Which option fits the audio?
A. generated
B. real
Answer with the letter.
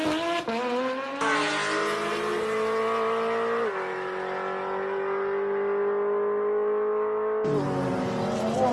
B